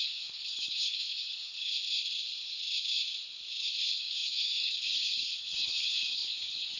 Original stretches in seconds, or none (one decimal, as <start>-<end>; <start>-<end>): 1.7-3.8